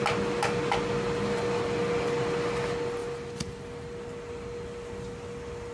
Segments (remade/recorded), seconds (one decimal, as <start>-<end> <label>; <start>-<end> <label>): 0.0-5.7 recorded